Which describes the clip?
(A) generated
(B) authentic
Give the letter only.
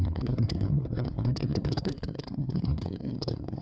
A